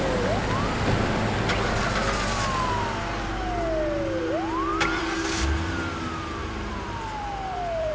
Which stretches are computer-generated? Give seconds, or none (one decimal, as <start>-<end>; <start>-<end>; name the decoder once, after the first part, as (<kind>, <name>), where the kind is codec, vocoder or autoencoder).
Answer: 4.7-5.2 (vocoder, BigVGAN v2); 6.4-7.9